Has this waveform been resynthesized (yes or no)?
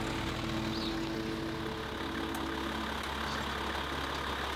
no